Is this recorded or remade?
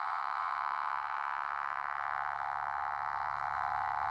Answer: remade